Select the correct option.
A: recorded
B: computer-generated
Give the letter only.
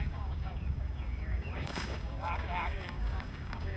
B